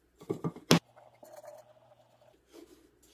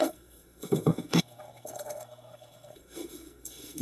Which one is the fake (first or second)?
second